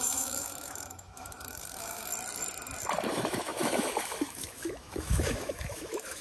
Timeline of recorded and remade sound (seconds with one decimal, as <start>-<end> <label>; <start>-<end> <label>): 0.0-2.1 remade; 2.1-3.1 recorded; 3.1-6.2 remade